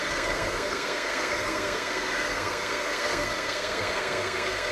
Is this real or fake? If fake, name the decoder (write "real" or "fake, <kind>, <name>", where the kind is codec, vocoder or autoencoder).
fake, codec, SNAC